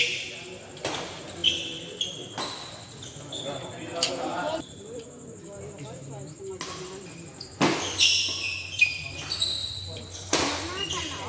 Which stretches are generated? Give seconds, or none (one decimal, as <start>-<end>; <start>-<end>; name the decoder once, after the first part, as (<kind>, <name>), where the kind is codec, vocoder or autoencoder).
3.9-6.5 (vocoder, BigVGAN v2); 9.6-10.4